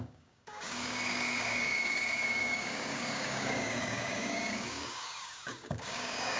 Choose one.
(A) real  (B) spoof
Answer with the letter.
B